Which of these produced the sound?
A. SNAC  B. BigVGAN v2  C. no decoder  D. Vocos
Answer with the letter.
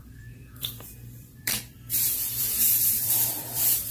B